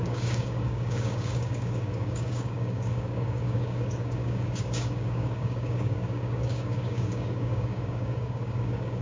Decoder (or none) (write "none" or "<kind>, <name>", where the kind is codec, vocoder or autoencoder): codec, DAC